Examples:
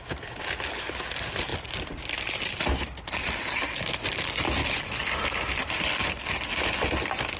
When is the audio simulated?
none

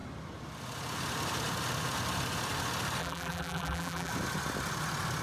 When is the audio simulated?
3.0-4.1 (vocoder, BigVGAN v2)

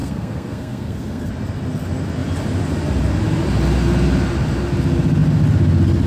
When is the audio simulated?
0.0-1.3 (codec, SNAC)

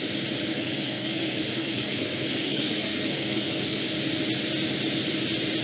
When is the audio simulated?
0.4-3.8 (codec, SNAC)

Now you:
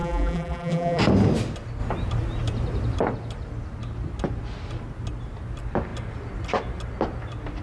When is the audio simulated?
0.0-1.0 (vocoder, BigVGAN v2)